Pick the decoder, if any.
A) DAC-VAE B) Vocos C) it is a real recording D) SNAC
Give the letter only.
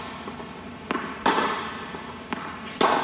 C